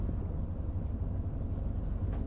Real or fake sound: real